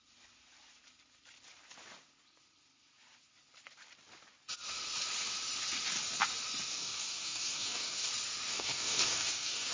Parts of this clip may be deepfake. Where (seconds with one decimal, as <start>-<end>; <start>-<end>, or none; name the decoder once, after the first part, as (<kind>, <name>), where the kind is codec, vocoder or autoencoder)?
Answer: 6.7-8.1 (codec, DAC); 8.5-9.7